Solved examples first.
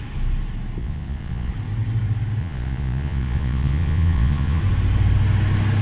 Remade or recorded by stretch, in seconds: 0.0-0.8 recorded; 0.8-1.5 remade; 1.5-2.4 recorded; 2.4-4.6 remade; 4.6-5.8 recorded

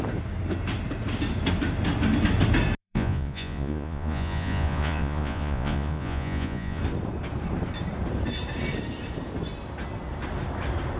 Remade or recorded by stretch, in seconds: 0.0-2.8 recorded; 2.8-6.8 remade; 6.8-11.0 recorded

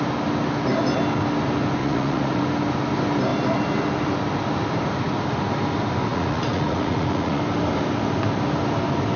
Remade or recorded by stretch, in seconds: 0.0-1.8 recorded; 1.8-2.4 remade; 2.4-6.1 recorded; 6.1-7.4 remade; 7.4-9.2 recorded

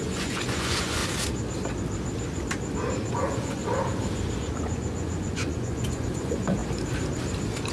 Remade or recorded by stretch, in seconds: 0.0-1.0 remade; 1.0-3.1 recorded; 3.1-3.6 remade; 3.6-4.4 recorded; 4.4-6.6 remade; 6.6-7.7 recorded

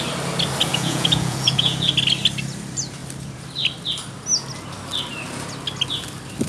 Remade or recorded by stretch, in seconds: 0.0-0.7 recorded; 0.7-1.9 remade; 1.9-6.5 recorded

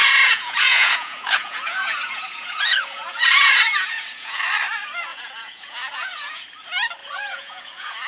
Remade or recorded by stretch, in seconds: 0.0-4.4 remade; 4.4-5.1 recorded; 5.1-6.4 remade; 6.4-7.0 recorded; 7.0-8.1 remade

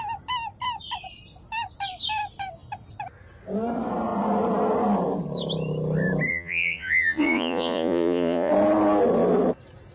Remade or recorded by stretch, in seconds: 0.0-6.3 recorded; 6.3-8.5 remade; 8.5-9.9 recorded